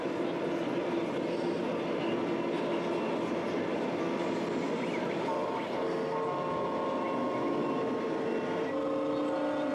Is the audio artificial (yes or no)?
no